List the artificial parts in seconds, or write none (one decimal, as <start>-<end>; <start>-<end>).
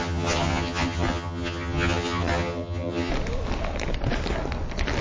0.0-3.1